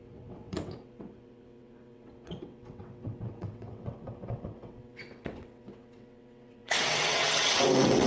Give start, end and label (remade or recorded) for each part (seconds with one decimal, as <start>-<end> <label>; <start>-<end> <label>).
0.0-8.1 remade